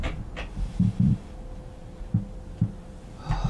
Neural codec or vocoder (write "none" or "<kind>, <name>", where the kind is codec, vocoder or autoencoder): none